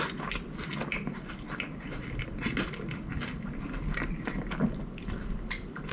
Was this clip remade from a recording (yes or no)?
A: no